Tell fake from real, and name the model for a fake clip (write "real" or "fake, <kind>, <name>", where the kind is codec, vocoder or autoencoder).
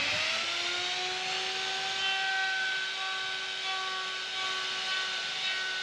real